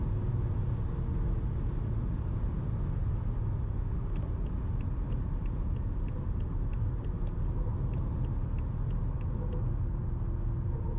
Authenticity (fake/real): real